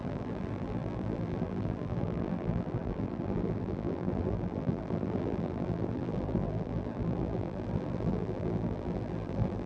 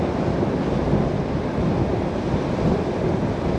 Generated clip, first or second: first